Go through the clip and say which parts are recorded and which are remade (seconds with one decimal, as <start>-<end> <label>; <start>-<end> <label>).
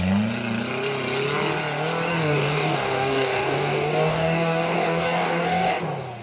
0.0-2.1 recorded; 2.1-5.8 remade; 5.8-6.2 recorded